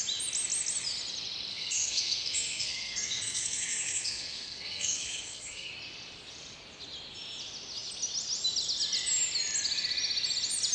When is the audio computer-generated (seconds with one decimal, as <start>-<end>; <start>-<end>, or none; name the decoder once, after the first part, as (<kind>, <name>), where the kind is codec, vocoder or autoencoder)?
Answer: 1.5-5.7 (codec, SNAC)